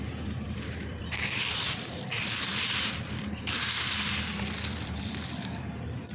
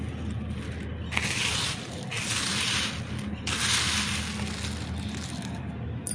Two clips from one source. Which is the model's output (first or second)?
first